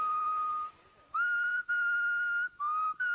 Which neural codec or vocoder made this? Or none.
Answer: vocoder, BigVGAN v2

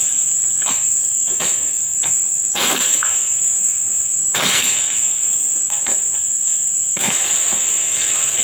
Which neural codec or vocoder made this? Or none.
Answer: codec, SNAC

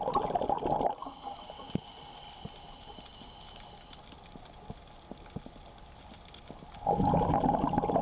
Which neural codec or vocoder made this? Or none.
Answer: none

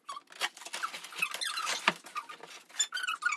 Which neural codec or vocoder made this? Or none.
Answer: none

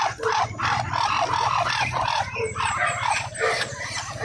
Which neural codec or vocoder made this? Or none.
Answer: none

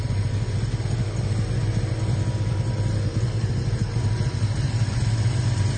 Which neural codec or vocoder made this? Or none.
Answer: none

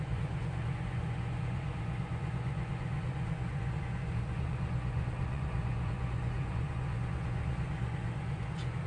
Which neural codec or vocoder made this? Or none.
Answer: vocoder, Vocos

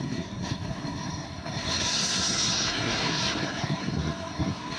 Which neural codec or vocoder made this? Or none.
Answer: codec, SNAC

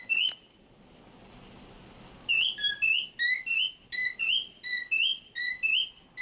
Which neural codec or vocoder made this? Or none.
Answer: none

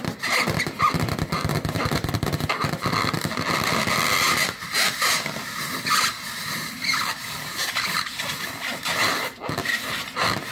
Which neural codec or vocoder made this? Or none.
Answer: none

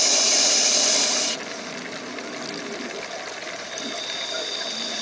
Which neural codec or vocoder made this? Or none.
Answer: none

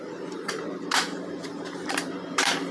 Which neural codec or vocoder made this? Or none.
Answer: vocoder, BigVGAN v2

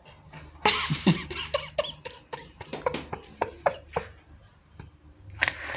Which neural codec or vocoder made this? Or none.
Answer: none